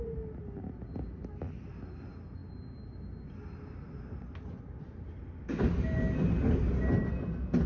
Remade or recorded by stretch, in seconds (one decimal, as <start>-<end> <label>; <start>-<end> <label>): 0.0-7.7 recorded